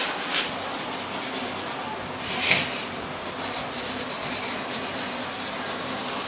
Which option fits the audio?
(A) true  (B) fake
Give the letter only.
A